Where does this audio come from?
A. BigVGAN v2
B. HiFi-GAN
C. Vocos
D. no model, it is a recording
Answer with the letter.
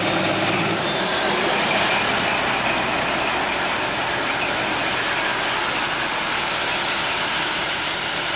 D